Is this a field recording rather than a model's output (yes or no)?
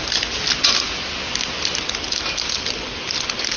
yes